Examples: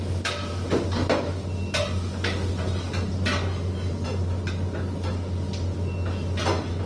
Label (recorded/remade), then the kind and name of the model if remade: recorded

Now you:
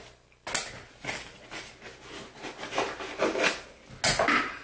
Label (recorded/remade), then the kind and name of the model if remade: recorded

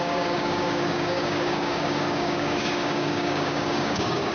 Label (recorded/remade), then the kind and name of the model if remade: remade, codec, DAC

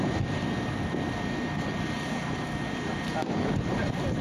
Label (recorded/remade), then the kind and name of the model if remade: recorded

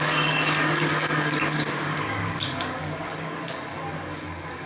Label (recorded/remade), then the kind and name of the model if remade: remade, codec, DAC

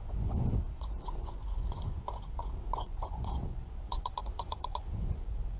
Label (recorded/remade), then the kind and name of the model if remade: remade, vocoder, Vocos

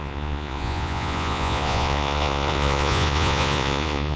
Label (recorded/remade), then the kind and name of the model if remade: remade, vocoder, Vocos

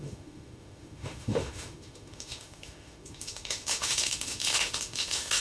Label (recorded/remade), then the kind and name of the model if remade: remade, autoencoder, DAC-VAE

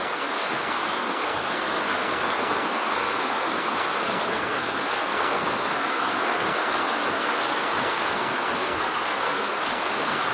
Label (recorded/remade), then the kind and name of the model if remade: remade, codec, SNAC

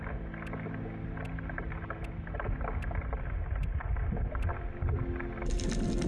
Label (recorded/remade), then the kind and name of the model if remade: recorded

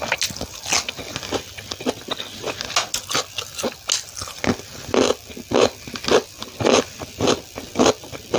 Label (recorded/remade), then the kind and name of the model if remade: recorded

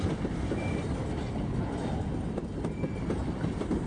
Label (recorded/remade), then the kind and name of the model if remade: recorded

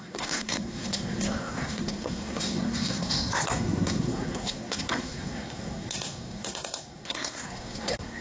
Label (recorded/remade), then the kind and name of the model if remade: remade, codec, SNAC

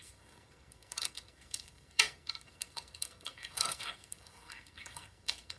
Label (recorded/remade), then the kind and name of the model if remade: remade, codec, SNAC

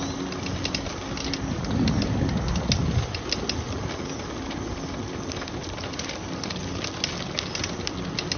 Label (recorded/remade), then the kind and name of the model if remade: recorded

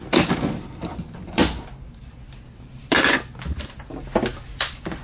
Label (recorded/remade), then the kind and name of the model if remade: recorded